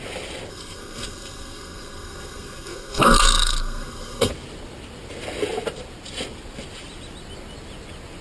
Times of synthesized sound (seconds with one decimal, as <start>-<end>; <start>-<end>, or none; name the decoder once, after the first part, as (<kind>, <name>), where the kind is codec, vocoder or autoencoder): 0.5-4.3 (codec, SNAC)